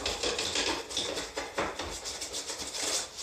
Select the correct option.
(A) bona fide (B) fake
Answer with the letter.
A